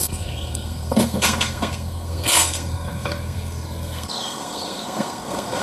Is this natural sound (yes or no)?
no